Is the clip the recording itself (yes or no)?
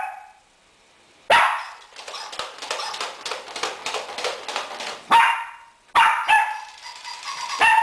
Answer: yes